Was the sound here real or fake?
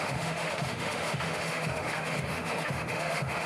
fake